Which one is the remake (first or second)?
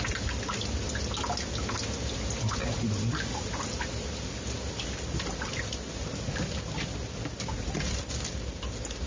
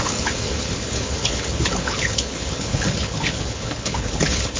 second